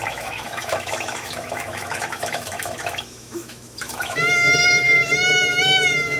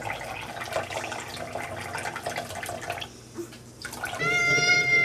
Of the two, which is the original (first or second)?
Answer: second